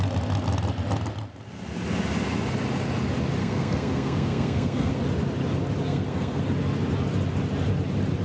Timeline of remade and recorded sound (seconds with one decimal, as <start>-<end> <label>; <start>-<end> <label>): 0.0-3.4 recorded; 3.4-5.0 remade; 5.0-5.9 recorded; 5.9-6.4 remade; 6.4-8.2 recorded